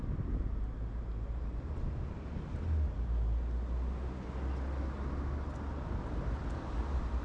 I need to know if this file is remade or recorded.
recorded